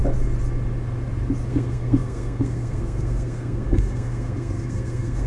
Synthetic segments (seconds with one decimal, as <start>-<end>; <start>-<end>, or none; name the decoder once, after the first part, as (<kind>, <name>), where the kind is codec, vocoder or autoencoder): 1.5-5.3 (codec, SNAC)